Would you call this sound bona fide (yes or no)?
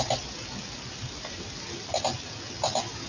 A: yes